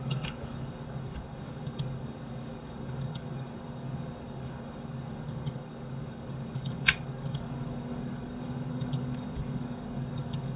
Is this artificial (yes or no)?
yes